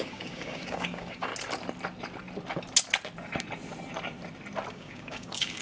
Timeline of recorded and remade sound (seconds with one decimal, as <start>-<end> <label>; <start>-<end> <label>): 0.0-1.3 remade; 1.3-4.7 recorded; 4.7-5.6 remade